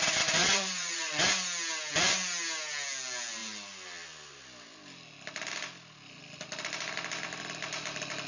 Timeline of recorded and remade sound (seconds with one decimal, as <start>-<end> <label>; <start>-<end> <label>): 0.0-0.4 recorded; 0.4-1.2 remade; 1.2-8.3 recorded